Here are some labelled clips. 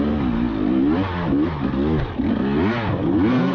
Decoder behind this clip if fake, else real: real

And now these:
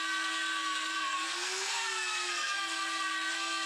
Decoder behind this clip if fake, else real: fake, codec, SNAC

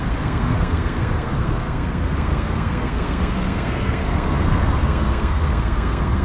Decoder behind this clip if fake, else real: fake, codec, SNAC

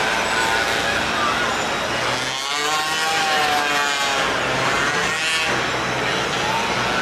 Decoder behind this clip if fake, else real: real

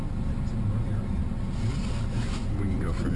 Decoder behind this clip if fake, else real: real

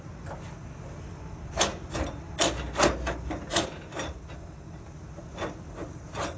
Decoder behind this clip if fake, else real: real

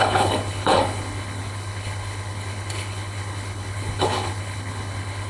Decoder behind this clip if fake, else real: fake, codec, HILCodec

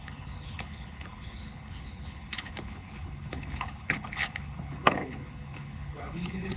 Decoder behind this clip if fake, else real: fake, codec, HILCodec